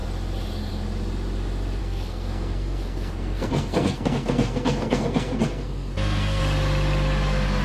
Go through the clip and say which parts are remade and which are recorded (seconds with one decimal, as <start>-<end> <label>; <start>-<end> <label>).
0.0-1.8 recorded; 1.8-6.4 remade; 6.4-7.6 recorded